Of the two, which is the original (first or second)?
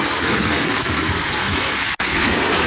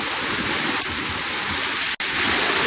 second